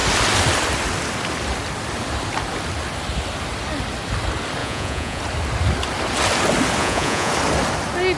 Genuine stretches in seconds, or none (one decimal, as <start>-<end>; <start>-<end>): 0.0-4.6; 5.2-6.8; 7.3-8.2

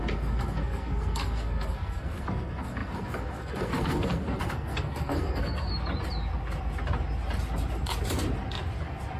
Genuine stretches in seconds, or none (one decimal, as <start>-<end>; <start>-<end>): 5.7-9.2